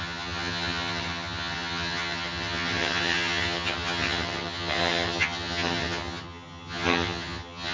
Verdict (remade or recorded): remade